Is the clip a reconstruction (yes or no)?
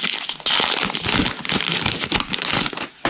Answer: no